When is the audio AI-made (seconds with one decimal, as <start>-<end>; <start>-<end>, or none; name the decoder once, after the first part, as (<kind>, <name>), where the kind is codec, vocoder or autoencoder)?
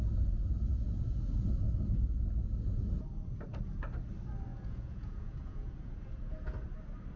4.5-6.3 (vocoder, Vocos)